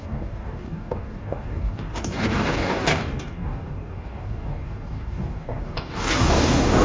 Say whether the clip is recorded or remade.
remade